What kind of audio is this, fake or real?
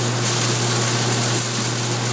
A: real